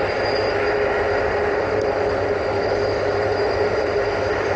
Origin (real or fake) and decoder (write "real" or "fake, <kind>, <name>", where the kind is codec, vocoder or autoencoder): real